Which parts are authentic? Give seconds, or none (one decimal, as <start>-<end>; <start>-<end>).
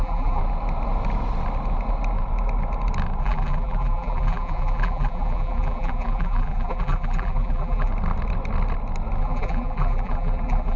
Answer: 0.4-3.2; 7.9-9.2